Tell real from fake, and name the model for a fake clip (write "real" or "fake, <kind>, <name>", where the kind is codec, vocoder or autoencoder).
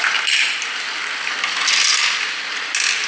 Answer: real